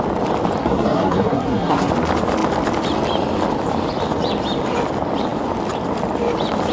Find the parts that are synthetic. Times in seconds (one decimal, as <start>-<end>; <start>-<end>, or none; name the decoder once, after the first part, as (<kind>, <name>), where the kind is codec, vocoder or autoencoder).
0.6-1.9 (codec, SNAC)